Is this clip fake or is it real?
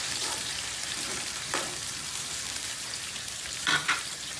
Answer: fake